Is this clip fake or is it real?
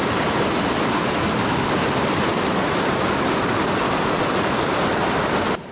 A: real